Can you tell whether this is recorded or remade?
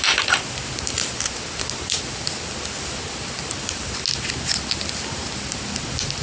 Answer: recorded